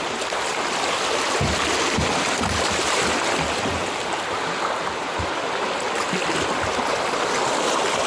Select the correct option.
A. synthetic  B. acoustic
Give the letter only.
B